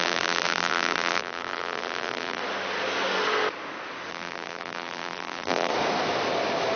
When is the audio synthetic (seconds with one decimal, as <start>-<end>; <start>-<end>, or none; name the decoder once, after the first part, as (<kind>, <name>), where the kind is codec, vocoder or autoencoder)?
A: 0.0-2.4 (vocoder, BigVGAN v2); 4.1-5.7